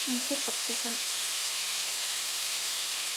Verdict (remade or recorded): remade